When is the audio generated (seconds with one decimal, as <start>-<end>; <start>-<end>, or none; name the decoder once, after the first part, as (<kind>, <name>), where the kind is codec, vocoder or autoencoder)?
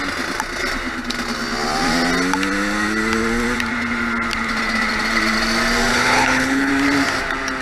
5.9-6.7 (codec, HILCodec)